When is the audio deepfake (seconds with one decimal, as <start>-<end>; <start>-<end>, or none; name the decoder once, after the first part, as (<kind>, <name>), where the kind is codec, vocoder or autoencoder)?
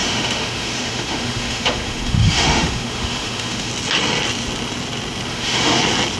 0.0-3.7 (autoencoder, DAC-VAE); 5.3-5.8